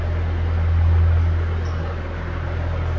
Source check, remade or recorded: recorded